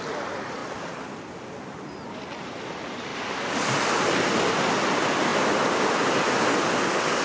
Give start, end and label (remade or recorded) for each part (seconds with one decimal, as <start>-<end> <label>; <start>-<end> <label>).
0.0-7.2 recorded